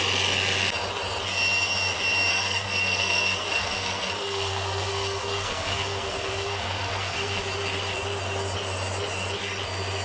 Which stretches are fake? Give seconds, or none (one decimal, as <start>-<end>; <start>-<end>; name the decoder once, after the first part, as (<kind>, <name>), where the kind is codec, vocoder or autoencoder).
2.3-7.4 (codec, SNAC)